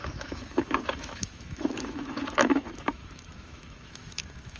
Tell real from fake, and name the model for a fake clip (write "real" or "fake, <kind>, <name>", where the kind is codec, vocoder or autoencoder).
fake, autoencoder, DAC-VAE